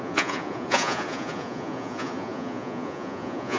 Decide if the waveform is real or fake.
fake